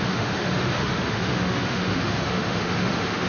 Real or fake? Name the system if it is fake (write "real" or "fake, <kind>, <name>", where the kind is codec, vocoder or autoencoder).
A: fake, autoencoder, DAC-VAE